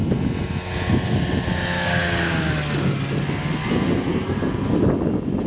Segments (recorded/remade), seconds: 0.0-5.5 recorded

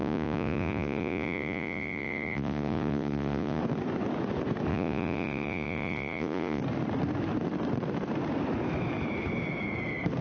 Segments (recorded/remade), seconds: 0.0-3.6 remade; 3.6-4.7 recorded; 4.7-6.6 remade; 6.6-10.2 recorded

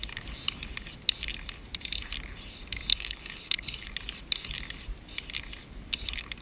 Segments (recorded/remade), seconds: 0.0-2.9 recorded; 2.9-3.9 remade; 3.9-6.4 recorded

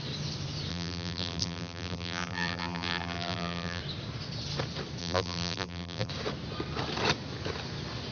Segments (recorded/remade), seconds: 0.0-0.7 recorded; 0.7-3.8 remade; 3.8-5.0 recorded; 5.0-6.1 remade; 6.1-8.1 recorded

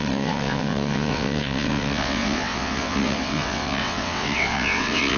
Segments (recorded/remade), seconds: 0.0-5.2 remade

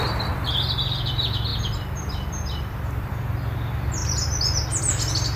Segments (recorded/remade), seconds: 0.0-1.5 recorded; 1.5-3.1 remade; 3.1-5.4 recorded

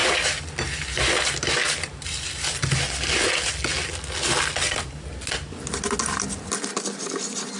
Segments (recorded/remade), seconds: 0.0-7.6 recorded